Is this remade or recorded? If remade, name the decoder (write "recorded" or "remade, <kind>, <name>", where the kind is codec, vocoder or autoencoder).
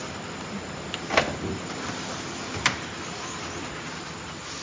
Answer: recorded